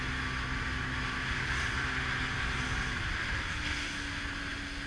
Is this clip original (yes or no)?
yes